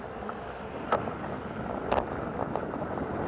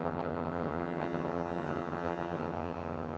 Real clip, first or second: first